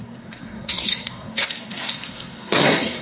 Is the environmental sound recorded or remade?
remade